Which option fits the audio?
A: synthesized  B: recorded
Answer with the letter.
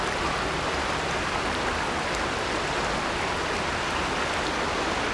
B